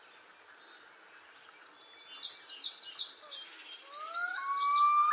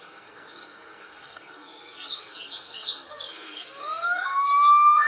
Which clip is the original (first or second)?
first